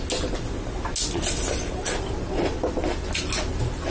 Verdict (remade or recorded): recorded